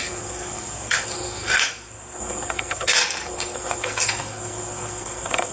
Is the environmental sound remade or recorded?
remade